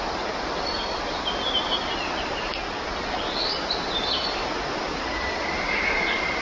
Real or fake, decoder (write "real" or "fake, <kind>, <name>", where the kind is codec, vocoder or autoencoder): real